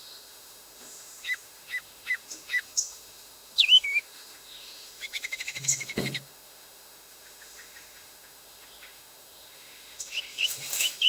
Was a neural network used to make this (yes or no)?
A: yes